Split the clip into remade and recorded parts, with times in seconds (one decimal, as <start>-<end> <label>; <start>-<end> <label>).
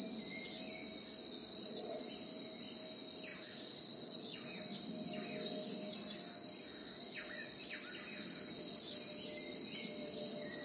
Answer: 0.0-1.4 recorded; 1.4-2.1 remade; 2.1-3.3 recorded; 3.3-4.6 remade; 4.6-6.8 recorded; 6.8-7.7 remade; 7.7-10.6 recorded